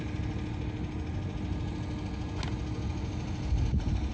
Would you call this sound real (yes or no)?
yes